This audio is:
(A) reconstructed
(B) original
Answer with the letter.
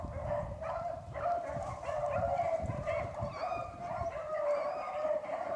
A